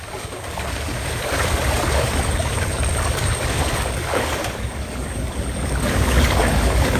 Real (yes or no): no